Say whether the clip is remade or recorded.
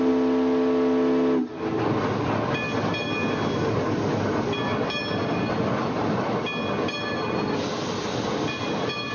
recorded